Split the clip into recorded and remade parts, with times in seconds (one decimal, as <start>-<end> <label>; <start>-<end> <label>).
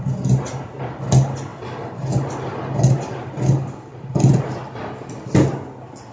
0.0-6.1 recorded